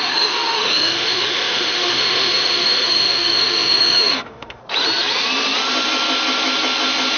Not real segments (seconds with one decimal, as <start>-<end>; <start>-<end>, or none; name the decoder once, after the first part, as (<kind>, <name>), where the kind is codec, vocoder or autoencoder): 0.0-4.6 (autoencoder, DAC-VAE)